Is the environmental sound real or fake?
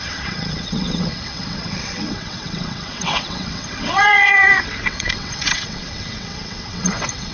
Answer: fake